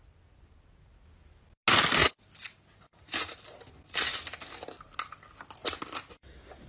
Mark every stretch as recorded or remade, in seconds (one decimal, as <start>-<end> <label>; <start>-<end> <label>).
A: 0.0-6.7 recorded